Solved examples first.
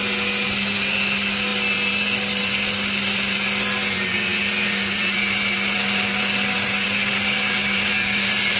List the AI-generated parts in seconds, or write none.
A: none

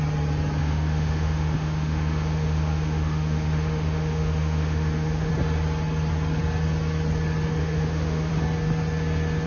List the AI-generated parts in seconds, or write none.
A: 0.6-5.3 (autoencoder, DAC-VAE); 7.6-8.3